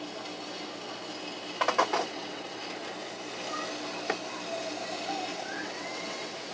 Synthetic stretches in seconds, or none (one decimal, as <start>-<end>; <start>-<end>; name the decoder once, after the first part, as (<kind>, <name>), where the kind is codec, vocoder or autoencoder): 2.0-2.6 (vocoder, WaveNeXt); 5.3-6.5